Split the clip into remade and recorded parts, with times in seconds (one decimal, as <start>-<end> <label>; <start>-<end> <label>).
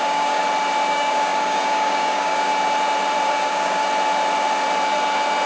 0.0-0.4 remade; 0.4-0.9 recorded; 0.9-2.5 remade; 2.5-3.3 recorded; 3.3-3.8 remade; 3.8-5.5 recorded